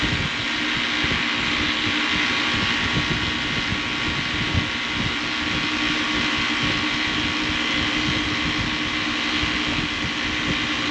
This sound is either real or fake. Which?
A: real